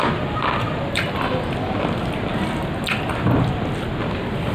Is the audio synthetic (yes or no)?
no